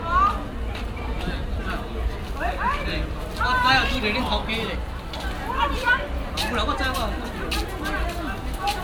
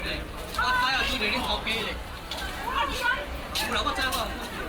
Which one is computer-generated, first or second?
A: second